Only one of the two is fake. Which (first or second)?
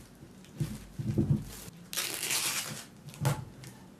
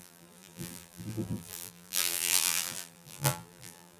second